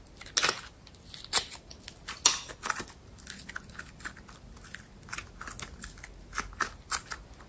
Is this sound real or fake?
real